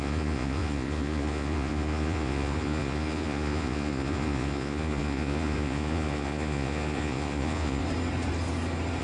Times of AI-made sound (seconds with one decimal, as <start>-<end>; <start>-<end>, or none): 0.0-7.8